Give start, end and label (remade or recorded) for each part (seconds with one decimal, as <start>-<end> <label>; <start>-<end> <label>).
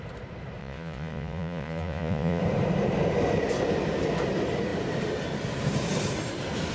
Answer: 0.0-0.6 recorded; 0.6-2.4 remade; 2.4-6.7 recorded